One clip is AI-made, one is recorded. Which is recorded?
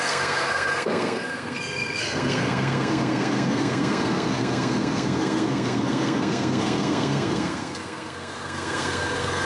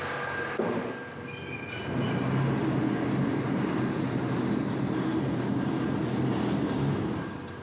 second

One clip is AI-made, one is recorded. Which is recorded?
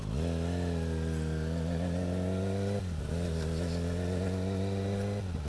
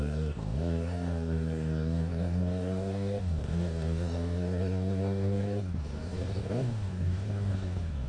first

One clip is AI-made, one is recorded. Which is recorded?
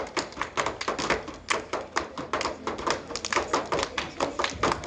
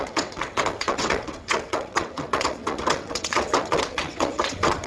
first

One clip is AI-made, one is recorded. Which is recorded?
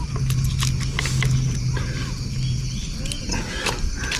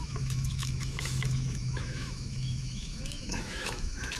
first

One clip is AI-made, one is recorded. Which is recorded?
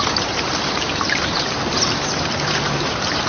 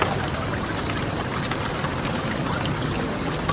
second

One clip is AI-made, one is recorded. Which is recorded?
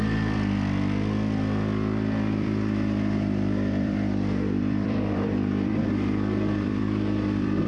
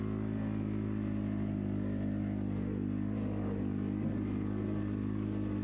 second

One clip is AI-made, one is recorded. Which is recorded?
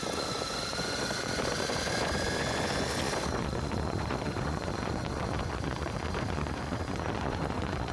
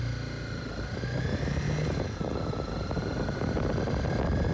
second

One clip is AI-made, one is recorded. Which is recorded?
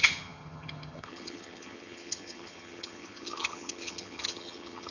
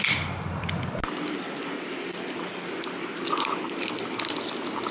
second